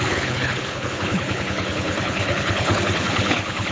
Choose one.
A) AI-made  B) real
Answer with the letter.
A